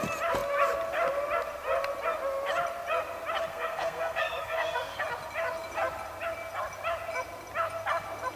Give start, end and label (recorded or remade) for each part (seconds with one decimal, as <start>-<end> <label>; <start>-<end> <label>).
0.0-3.5 recorded; 3.5-5.0 remade; 5.0-8.4 recorded